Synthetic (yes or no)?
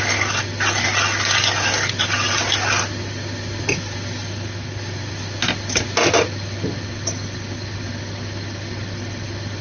no